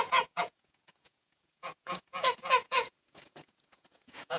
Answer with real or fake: fake